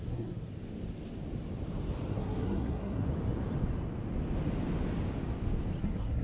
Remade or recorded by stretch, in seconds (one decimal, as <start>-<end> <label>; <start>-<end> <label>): 0.0-0.5 remade; 0.5-2.1 recorded; 2.1-3.0 remade; 3.0-5.8 recorded; 5.8-6.2 remade